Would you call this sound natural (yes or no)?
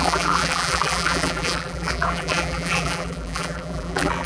no